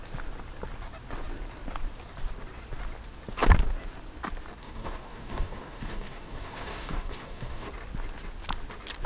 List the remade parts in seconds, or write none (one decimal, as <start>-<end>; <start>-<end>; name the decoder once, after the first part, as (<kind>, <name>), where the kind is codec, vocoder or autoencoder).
4.6-7.7 (codec, DAC)